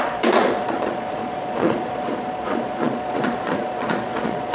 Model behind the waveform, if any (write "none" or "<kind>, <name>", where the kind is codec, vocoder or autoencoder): vocoder, Vocos